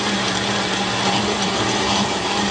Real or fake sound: real